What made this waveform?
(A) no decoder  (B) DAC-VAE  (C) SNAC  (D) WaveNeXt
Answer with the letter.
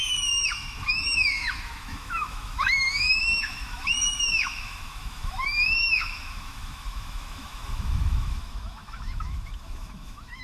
B